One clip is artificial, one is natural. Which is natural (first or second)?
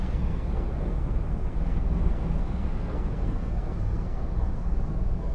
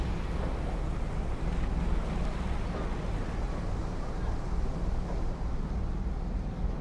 second